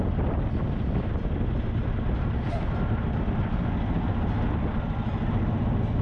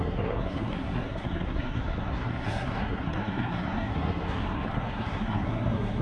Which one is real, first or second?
first